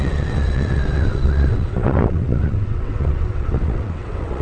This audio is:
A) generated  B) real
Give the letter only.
A